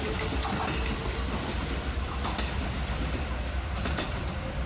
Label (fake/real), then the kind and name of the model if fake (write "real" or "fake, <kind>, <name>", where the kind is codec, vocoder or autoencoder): real